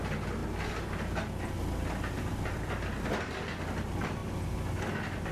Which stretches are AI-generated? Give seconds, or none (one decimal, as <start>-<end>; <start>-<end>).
none